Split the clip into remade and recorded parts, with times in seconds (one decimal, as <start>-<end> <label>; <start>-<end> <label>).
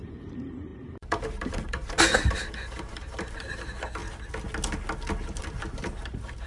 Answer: 0.0-4.0 remade; 4.0-5.4 recorded; 5.4-6.5 remade